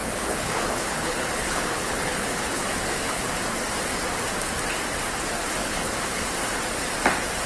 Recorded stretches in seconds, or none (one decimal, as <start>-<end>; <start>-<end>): 3.3-5.6; 6.3-7.5